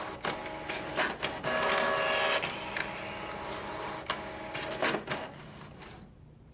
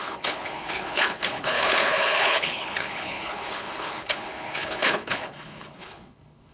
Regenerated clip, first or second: second